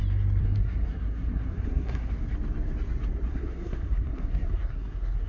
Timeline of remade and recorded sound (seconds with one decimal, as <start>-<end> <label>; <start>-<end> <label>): 0.0-0.4 recorded; 0.4-2.1 remade; 2.1-3.3 recorded; 3.3-5.3 remade